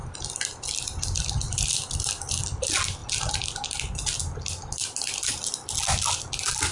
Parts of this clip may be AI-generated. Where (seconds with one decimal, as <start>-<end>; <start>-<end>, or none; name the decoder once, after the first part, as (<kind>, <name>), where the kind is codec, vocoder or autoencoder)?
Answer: none